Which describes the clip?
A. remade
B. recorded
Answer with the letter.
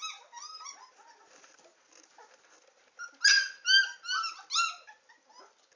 B